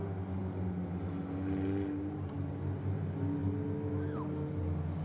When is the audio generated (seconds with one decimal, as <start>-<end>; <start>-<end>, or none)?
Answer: none